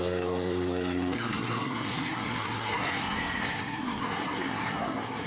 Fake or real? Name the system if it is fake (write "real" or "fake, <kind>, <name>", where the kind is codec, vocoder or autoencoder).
fake, codec, SNAC